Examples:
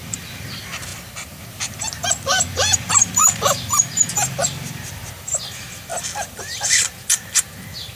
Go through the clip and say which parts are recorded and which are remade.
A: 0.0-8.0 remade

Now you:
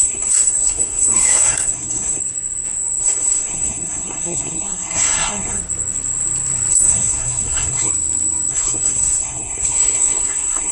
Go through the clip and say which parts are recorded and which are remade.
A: 0.0-2.2 remade; 2.2-3.0 recorded; 3.0-5.6 remade; 5.6-6.7 recorded; 6.7-7.9 remade; 7.9-8.5 recorded; 8.5-10.7 remade

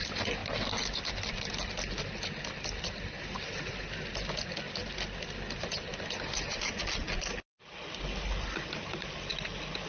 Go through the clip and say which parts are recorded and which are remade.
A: 0.0-9.9 recorded

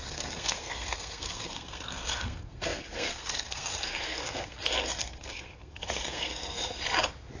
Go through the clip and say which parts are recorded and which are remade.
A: 0.0-6.8 remade; 6.8-7.4 recorded